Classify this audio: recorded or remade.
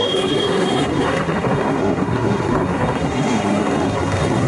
remade